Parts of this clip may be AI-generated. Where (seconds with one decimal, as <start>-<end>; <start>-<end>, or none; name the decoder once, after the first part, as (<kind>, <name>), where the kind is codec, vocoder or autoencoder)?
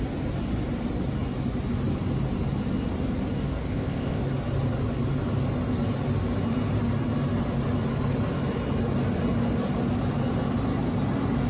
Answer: 3.7-4.2 (codec, ZipCodec)